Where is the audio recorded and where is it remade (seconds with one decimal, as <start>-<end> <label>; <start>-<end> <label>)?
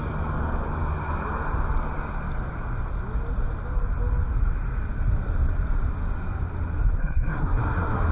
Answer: 0.0-7.0 recorded; 7.0-8.1 remade